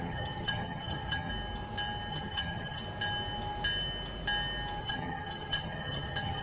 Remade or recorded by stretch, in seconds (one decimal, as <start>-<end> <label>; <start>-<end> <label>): 0.0-1.3 remade; 1.3-2.1 recorded; 2.1-2.8 remade; 2.8-4.8 recorded; 4.8-6.4 remade